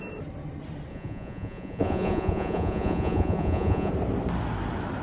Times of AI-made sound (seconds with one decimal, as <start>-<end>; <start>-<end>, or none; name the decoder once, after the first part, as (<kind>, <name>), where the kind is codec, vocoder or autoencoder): 0.9-3.9 (vocoder, Vocos)